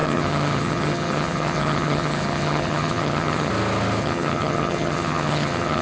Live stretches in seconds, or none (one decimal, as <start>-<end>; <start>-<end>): 3.5-4.0